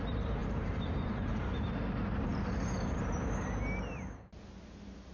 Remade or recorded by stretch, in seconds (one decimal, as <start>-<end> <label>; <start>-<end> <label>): 0.0-0.4 recorded; 0.4-1.7 remade; 1.7-5.1 recorded